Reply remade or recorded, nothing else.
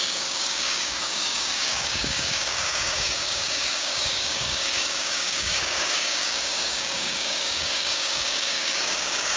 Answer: remade